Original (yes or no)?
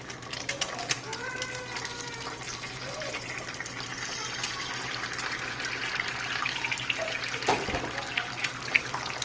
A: yes